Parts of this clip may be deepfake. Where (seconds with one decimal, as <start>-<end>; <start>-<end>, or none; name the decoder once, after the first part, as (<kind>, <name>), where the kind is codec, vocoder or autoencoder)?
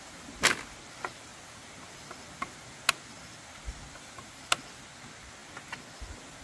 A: none